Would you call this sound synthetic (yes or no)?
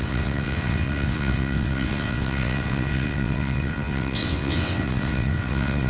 yes